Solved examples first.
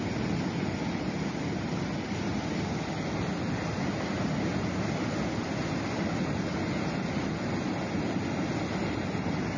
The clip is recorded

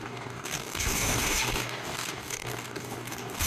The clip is remade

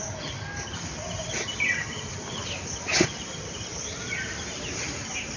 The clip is recorded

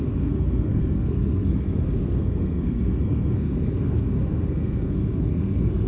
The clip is remade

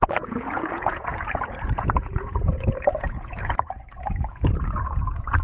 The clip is remade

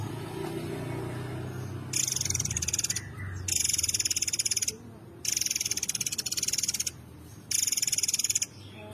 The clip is recorded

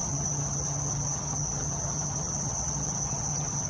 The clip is remade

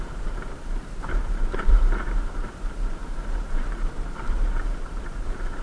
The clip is remade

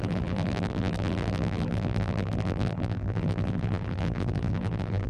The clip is remade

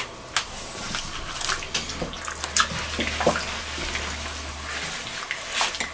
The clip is recorded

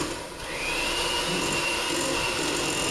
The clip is recorded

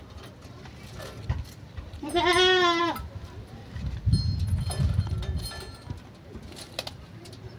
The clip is recorded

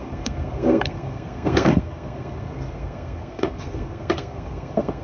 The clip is remade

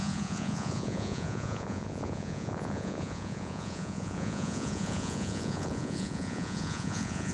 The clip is remade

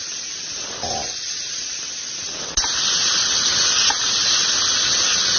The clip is recorded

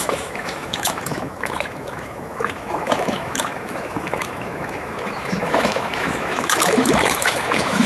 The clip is remade